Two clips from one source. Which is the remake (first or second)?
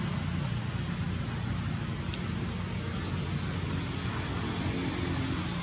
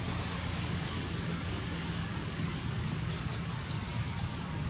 second